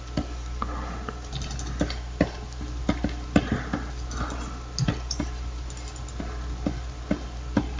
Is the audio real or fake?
real